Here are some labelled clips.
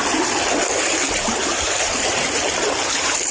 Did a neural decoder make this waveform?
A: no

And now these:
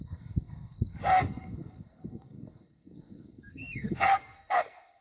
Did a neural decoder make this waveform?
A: yes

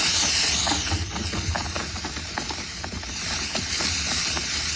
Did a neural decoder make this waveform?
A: no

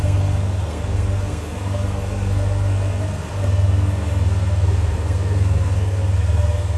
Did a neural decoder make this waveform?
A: yes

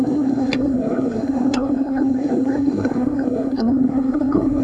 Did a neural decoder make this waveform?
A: yes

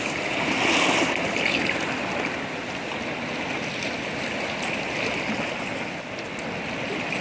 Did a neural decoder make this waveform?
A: no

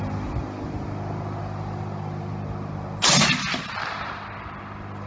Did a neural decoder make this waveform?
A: no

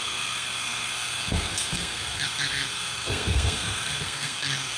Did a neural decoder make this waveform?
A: yes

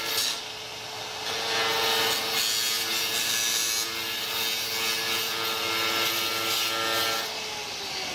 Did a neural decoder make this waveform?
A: no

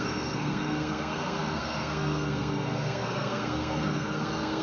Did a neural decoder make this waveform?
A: yes